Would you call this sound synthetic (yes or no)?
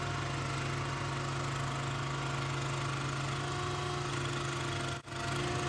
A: no